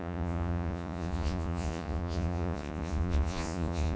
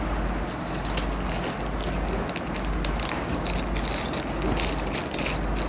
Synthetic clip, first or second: first